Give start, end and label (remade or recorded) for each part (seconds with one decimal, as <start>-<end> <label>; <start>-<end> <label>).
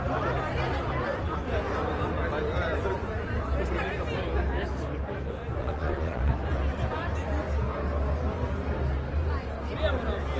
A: 0.0-5.6 recorded; 5.6-6.3 remade; 6.3-10.4 recorded